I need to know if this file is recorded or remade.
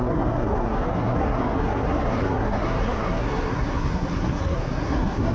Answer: remade